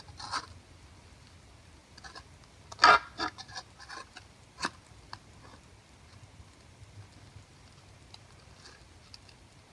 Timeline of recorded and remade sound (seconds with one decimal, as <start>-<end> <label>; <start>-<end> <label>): 0.0-9.7 recorded